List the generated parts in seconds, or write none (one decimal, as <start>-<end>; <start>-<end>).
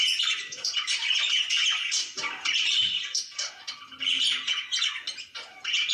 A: 0.0-2.9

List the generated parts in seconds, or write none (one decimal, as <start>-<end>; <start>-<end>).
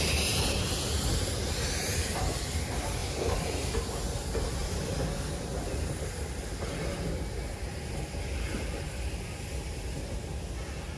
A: 3.0-3.7; 4.6-5.3